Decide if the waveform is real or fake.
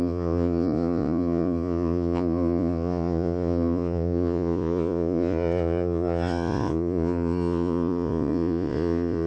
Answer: fake